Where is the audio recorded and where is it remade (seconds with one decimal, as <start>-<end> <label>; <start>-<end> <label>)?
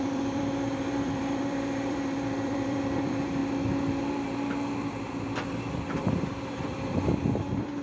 0.0-3.4 remade; 3.4-6.0 recorded; 6.0-7.8 remade